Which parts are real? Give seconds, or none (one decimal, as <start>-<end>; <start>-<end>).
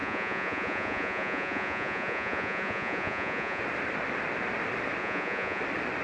3.6-5.0; 5.6-6.0